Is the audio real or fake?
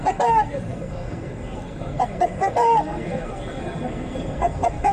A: fake